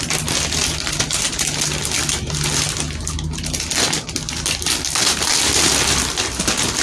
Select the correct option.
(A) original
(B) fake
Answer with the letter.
A